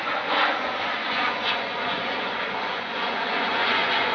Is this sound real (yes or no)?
no